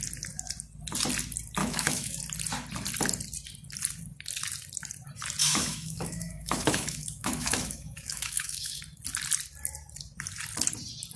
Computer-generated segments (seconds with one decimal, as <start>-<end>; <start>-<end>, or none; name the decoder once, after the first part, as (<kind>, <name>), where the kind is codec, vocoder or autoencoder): 1.6-2.2 (autoencoder, DAC-VAE); 5.4-8.8